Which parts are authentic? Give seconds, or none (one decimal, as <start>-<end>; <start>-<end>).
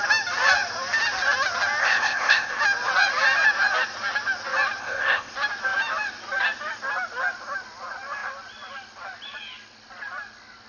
0.0-1.8; 2.6-4.8; 5.3-10.7